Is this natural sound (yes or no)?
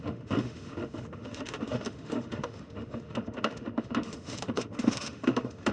no